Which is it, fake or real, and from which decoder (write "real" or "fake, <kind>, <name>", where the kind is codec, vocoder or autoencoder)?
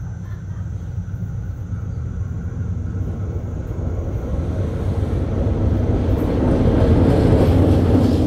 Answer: real